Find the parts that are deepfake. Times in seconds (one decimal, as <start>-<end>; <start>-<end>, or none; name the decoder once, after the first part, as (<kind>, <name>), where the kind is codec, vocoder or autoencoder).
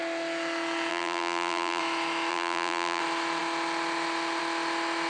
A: 0.9-1.8 (vocoder, BigVGAN v2); 2.3-3.0